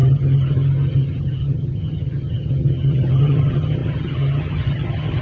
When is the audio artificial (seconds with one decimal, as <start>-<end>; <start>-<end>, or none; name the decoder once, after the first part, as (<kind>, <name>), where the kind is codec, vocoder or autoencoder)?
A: 0.0-5.2 (vocoder, HiFi-GAN)